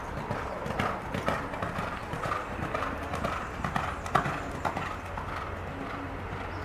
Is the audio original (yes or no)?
yes